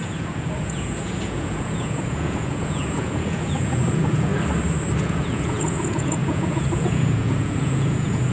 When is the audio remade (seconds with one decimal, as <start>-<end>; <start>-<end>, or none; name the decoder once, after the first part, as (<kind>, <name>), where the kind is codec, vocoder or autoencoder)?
0.0-4.3 (vocoder, Vocos); 5.0-8.3